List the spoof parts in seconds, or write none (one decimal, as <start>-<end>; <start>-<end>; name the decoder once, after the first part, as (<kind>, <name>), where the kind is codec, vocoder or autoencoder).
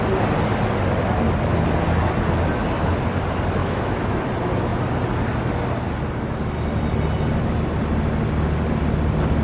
3.6-4.2 (autoencoder, DAC-VAE)